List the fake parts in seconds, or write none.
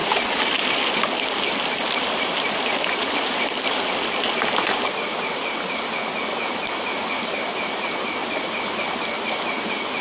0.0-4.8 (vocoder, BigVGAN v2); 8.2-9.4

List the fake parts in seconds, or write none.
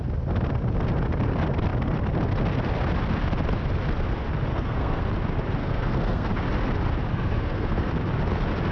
4.5-5.0 (codec, SNAC); 5.6-6.3; 7.1-7.9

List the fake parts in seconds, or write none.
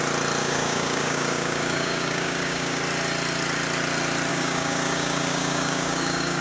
0.4-2.8 (codec, DAC); 4.3-6.4